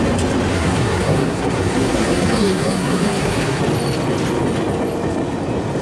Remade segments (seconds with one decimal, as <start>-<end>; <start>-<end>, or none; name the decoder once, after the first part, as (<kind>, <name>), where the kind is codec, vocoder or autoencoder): 0.5-3.6 (codec, SNAC)